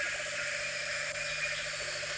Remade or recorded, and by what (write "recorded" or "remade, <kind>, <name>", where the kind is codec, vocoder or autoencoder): recorded